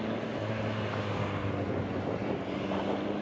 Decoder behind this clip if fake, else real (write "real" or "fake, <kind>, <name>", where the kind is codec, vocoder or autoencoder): real